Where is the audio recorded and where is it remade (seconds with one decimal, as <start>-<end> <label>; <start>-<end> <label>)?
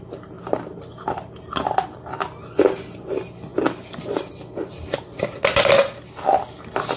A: 0.0-7.0 recorded